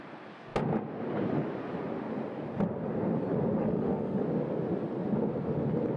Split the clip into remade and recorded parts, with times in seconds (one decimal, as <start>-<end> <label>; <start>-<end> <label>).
0.0-3.6 recorded; 3.6-4.2 remade; 4.2-6.0 recorded